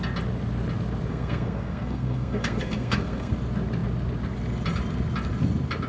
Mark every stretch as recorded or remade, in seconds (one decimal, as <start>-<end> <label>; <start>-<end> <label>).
0.0-1.1 recorded; 1.1-3.3 remade; 3.3-5.9 recorded

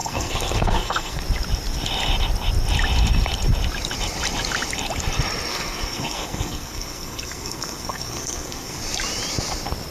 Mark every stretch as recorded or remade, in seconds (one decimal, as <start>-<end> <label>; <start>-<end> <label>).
0.0-1.2 remade; 1.2-5.5 recorded; 5.5-8.8 remade; 8.8-9.9 recorded

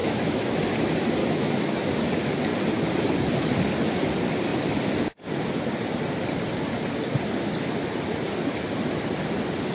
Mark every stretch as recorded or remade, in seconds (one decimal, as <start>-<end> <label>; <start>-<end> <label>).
0.0-0.6 remade; 0.6-1.2 recorded; 1.2-1.9 remade; 1.9-9.7 recorded

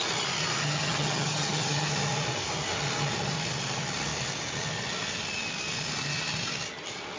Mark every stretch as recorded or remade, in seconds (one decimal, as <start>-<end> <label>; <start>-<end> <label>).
0.0-0.6 recorded; 0.6-1.9 remade; 1.9-7.2 recorded

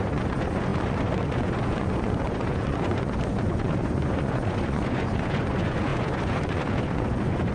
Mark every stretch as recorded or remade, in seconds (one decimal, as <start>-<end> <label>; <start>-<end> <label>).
0.0-7.5 remade